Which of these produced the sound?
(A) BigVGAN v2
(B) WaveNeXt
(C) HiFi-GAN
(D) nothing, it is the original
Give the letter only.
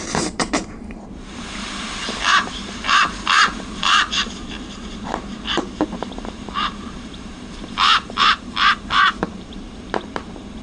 A